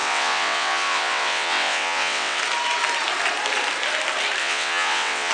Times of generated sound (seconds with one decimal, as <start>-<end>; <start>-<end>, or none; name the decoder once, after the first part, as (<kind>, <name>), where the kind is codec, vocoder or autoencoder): 0.0-2.4 (vocoder, WaveNeXt); 4.4-5.3